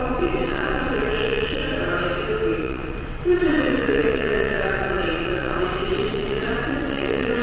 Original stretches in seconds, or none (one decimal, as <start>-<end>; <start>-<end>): 1.6-2.6